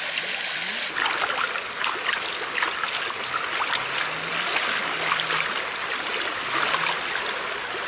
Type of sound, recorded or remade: recorded